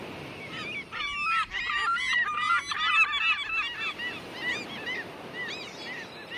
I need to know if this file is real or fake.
real